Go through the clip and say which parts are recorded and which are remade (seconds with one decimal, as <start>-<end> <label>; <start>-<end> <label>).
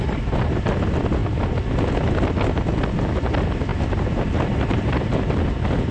0.0-3.7 recorded; 3.7-5.4 remade; 5.4-5.9 recorded